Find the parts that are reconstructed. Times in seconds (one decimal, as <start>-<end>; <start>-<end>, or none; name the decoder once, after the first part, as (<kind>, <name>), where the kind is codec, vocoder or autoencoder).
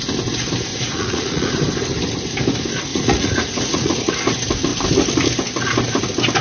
0.7-1.5 (vocoder, Vocos); 2.9-4.1